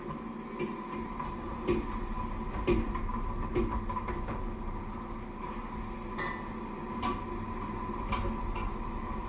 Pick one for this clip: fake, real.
real